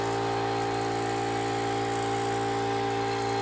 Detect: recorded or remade recorded